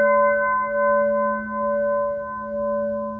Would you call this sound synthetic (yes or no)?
no